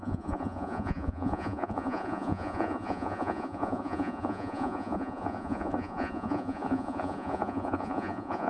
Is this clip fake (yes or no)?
yes